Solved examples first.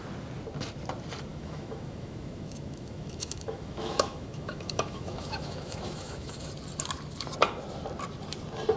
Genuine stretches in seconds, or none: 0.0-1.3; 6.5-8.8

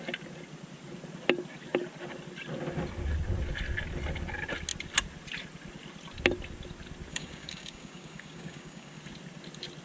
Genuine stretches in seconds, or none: 0.0-7.1; 9.0-9.8

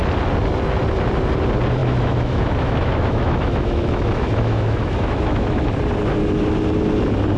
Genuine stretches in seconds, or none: 0.0-1.8; 5.7-7.4

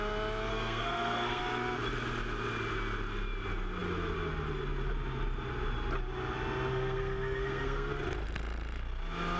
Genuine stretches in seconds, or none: 0.0-0.5; 1.4-6.7; 7.9-9.4

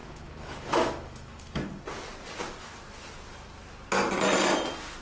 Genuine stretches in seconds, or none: 1.7-5.0

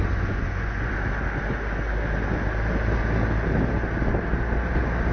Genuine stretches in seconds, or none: 0.9-5.1